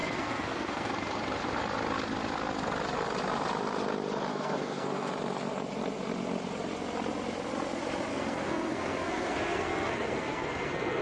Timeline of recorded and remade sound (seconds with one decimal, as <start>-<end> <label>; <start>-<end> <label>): 0.0-0.9 remade; 0.9-4.3 recorded; 4.3-5.1 remade; 5.1-8.1 recorded; 8.1-11.0 remade